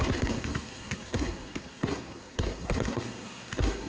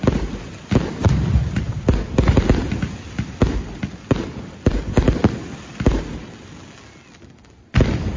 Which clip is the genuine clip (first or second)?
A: second